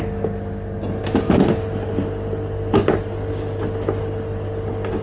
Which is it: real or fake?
real